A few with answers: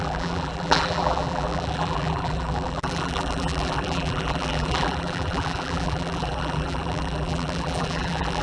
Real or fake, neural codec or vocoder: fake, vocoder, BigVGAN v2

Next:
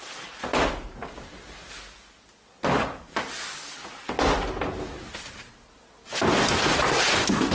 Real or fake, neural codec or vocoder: real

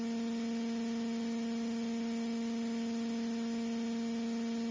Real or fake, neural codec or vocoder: real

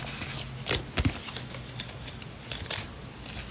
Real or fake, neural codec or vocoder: real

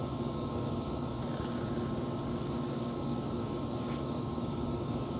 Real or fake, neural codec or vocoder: fake, codec, DAC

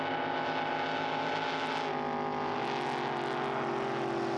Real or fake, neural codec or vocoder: real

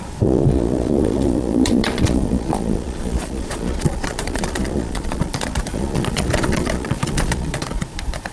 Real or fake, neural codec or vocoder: fake, vocoder, Vocos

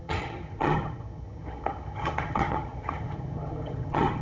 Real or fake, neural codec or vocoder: fake, vocoder, HiFi-GAN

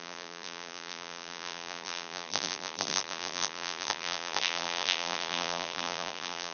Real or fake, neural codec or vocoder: fake, vocoder, BigVGAN v2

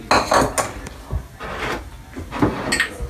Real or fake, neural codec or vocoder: real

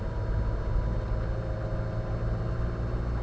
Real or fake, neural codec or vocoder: real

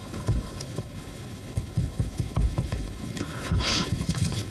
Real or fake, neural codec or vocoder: fake, codec, HILCodec